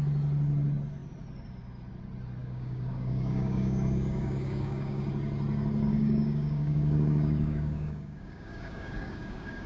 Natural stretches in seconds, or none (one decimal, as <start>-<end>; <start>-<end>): 0.0-2.4; 5.1-5.9